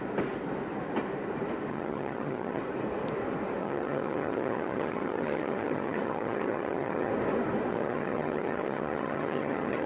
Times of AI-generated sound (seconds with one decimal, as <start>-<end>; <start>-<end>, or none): 1.7-2.6; 3.6-7.1; 7.7-9.9